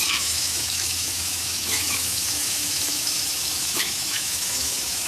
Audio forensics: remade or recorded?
remade